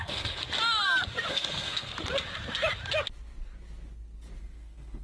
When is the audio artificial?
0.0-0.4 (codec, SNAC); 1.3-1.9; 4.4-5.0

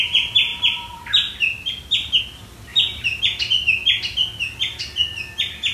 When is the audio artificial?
2.7-3.2 (vocoder, BigVGAN v2)

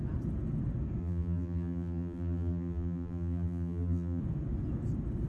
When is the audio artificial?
1.0-4.2 (vocoder, BigVGAN v2)

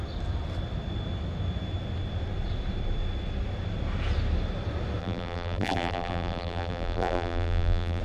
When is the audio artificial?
5.0-8.0 (vocoder, BigVGAN v2)

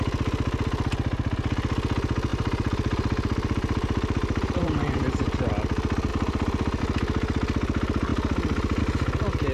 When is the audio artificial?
2.3-5.5 (vocoder, BigVGAN v2); 6.1-6.8

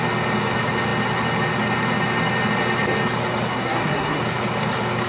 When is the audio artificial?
3.5-4.2 (codec, SNAC)

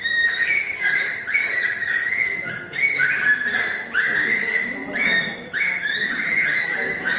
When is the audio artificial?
0.0-2.9 (autoencoder, DAC-VAE); 3.8-4.8; 5.4-7.2

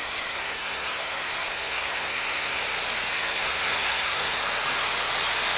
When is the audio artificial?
0.0-2.6 (codec, SNAC); 3.1-4.4